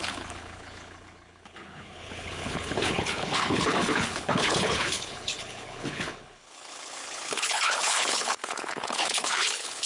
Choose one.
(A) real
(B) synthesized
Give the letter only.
B